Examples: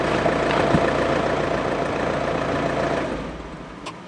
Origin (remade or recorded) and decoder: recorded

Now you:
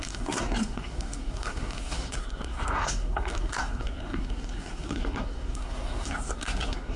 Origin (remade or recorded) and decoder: remade, codec, SNAC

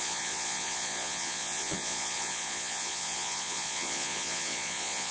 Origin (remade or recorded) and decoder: remade, vocoder, Vocos